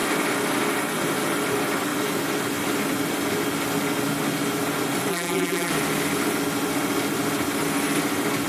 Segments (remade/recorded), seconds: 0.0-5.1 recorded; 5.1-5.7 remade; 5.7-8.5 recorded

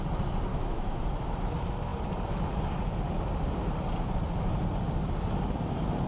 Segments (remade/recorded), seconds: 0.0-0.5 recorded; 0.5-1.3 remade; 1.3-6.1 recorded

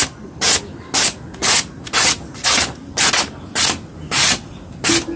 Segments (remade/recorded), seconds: 0.0-5.2 recorded